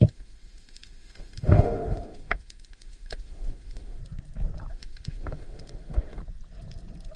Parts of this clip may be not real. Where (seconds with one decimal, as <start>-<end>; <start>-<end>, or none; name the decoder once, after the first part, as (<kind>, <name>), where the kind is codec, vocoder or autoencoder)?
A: 0.0-4.0 (autoencoder, DAC-VAE); 4.7-6.2